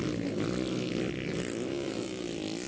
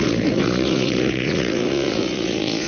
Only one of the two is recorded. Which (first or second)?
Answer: first